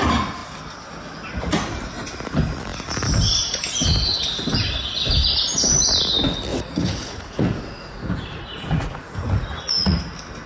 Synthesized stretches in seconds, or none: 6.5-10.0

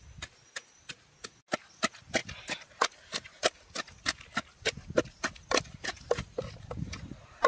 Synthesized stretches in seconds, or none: none

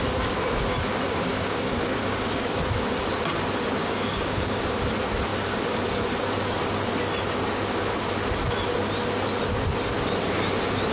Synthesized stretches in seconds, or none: 1.3-2.5; 3.8-4.6

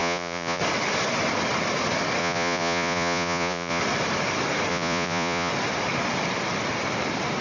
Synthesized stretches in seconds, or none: 0.0-0.6; 2.2-3.8; 4.7-5.5

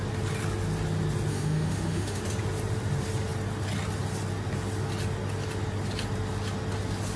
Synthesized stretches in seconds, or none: 1.3-2.2

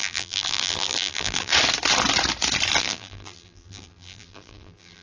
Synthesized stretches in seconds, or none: 0.0-1.5; 2.8-5.0